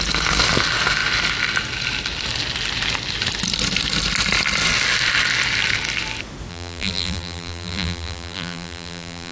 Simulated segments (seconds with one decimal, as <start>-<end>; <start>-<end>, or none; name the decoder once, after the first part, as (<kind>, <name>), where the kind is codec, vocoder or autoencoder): 6.5-9.3 (vocoder, BigVGAN v2)